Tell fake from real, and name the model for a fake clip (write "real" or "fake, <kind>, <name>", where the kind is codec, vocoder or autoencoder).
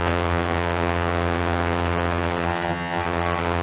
fake, vocoder, HiFi-GAN